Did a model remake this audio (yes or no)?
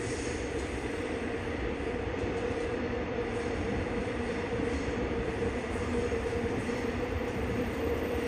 yes